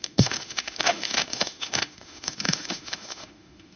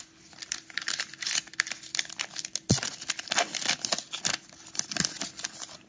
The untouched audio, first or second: second